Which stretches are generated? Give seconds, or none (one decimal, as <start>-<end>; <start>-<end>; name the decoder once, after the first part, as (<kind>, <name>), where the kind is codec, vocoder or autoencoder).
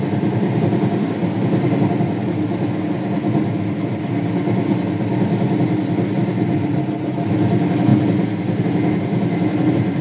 none